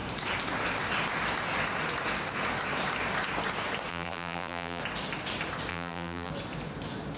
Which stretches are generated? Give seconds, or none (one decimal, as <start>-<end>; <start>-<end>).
3.9-4.8; 5.7-6.3